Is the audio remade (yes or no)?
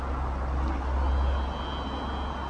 no